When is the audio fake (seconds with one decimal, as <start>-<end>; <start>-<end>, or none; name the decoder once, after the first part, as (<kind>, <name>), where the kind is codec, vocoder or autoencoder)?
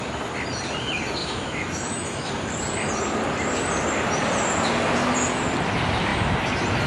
1.2-2.3 (autoencoder, DAC-VAE)